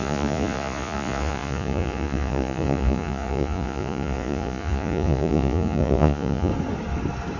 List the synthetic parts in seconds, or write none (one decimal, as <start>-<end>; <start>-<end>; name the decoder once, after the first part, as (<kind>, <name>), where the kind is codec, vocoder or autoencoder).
0.0-6.5 (vocoder, Vocos)